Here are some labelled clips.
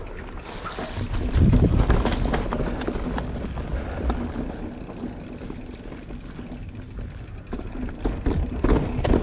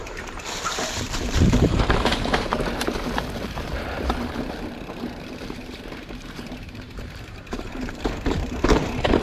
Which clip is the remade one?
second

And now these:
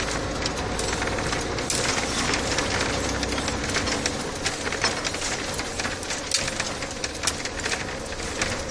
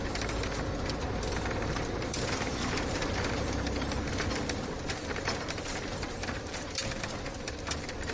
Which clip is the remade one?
second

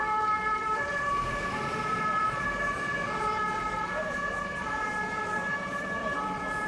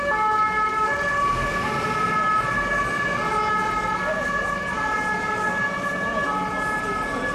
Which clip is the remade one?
first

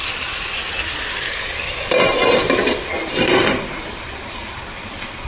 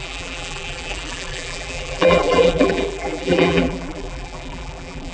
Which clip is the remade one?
second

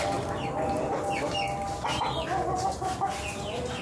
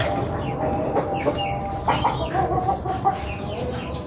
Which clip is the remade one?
second